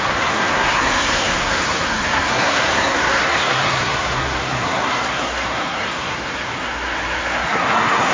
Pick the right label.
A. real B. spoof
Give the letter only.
B